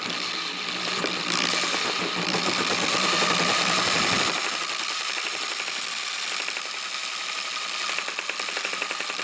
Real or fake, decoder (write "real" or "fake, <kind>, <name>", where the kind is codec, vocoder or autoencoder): real